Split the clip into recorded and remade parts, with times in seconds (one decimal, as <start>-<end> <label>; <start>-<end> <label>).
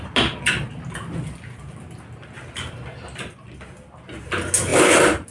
0.0-4.7 recorded; 4.7-5.3 remade